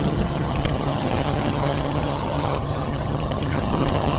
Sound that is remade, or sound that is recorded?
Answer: remade